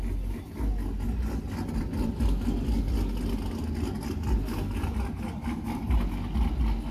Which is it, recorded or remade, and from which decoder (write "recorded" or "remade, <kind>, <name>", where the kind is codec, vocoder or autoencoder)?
recorded